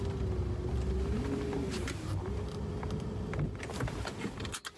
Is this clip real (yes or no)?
yes